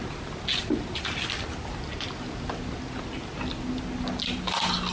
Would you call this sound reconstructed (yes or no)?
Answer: no